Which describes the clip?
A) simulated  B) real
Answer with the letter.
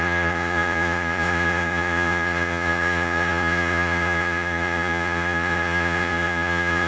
A